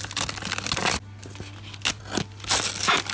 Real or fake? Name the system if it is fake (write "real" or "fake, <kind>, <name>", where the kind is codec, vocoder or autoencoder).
real